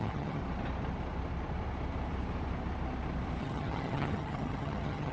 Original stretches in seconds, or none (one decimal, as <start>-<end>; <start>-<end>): 0.4-3.4